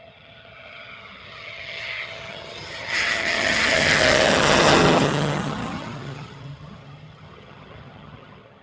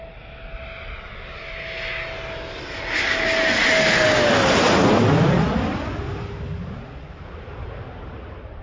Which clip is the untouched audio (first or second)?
second